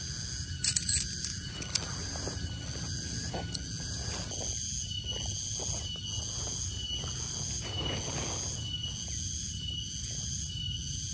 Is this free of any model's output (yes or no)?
yes